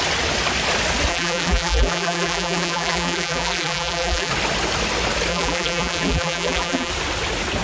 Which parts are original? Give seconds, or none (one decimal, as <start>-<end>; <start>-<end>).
0.0-1.1; 4.3-5.3; 6.9-7.6